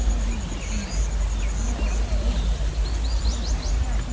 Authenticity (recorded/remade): recorded